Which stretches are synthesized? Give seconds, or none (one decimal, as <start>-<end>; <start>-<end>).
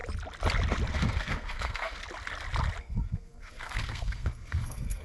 0.9-2.0; 2.8-5.0